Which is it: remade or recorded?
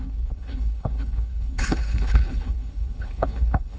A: remade